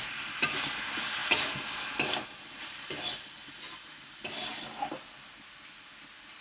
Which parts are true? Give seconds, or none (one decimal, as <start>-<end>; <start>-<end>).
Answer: 0.0-6.4